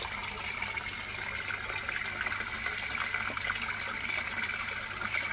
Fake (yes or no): no